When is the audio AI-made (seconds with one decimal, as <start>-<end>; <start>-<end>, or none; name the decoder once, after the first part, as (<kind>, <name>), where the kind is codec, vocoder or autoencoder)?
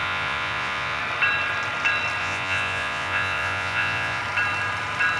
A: 0.0-1.0 (vocoder, Vocos); 2.2-4.2